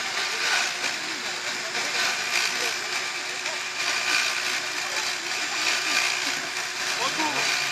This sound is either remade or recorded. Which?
recorded